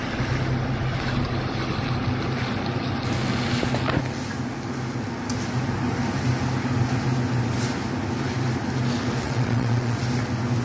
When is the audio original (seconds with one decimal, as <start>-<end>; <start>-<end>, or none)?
0.0-9.2; 10.0-10.6